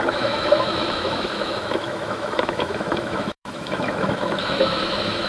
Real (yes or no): no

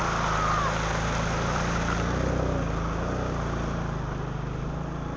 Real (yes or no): yes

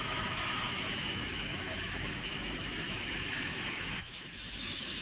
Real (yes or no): no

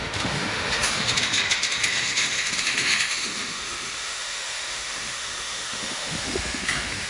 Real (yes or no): no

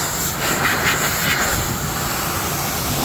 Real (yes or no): yes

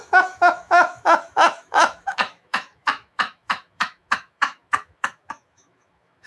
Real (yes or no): no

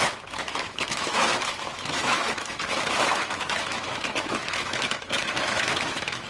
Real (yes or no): no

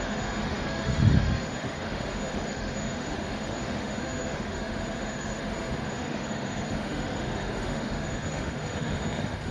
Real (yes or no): no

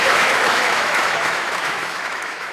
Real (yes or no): no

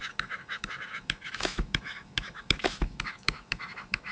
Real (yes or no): no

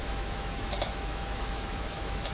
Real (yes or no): no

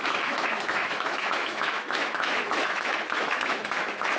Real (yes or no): no